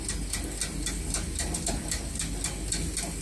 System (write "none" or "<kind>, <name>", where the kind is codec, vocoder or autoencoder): none